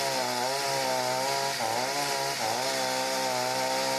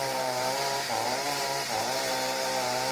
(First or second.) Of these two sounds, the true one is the first